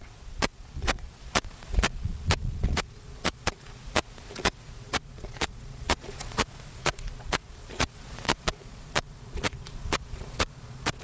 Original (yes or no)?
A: no